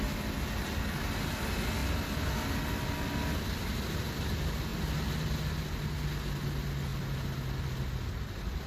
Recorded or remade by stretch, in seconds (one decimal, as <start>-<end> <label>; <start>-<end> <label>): 0.0-8.7 recorded